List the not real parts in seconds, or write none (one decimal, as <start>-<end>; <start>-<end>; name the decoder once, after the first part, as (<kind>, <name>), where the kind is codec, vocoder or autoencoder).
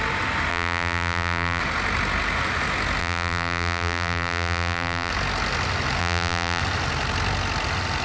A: 0.5-1.6 (vocoder, BigVGAN v2); 3.0-5.1; 6.0-6.6